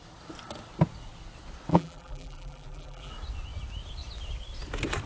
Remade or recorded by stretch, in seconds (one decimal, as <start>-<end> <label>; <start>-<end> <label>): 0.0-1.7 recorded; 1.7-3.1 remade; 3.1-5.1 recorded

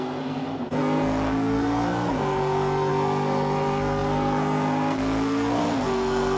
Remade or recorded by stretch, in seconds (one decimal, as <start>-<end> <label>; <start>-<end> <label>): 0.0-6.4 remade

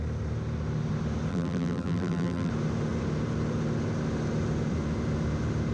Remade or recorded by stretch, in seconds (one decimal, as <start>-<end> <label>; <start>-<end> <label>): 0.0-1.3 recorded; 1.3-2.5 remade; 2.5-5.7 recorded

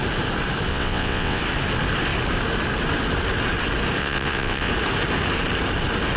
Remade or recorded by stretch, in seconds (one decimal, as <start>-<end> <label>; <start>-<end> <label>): 0.0-0.7 recorded; 0.7-1.4 remade; 1.4-4.0 recorded; 4.0-4.7 remade; 4.7-6.2 recorded